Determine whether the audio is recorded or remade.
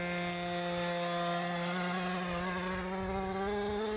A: recorded